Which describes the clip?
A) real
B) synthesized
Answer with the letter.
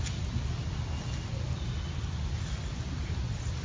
A